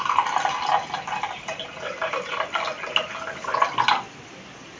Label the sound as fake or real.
real